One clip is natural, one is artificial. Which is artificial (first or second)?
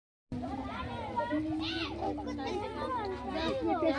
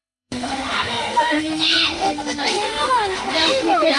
second